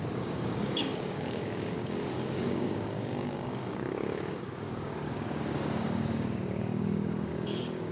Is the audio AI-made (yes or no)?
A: yes